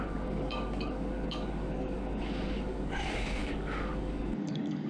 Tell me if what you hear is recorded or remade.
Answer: remade